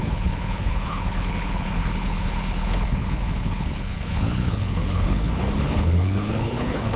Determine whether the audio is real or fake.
fake